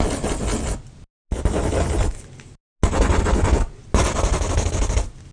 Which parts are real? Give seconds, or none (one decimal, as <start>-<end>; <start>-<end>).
0.0-5.3